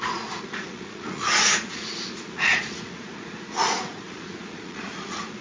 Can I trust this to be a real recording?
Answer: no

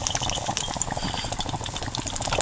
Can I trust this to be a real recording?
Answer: yes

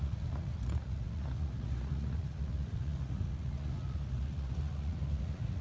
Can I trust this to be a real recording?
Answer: no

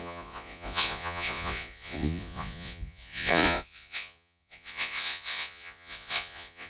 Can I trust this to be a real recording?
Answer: no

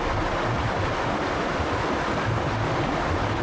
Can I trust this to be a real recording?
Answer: yes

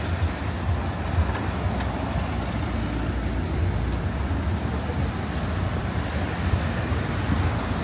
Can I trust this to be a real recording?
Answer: yes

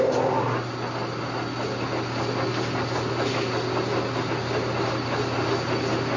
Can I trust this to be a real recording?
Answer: yes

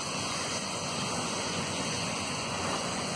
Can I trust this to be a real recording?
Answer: no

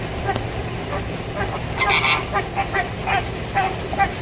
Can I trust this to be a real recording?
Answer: yes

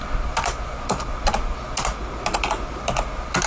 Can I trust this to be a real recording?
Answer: yes